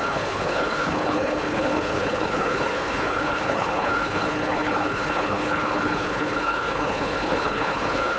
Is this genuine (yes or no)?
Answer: no